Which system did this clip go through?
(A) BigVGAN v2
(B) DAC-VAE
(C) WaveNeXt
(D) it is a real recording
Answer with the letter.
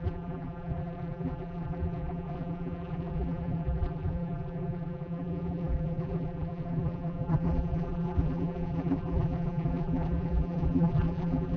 A